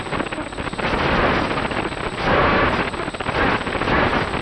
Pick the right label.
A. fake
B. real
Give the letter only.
B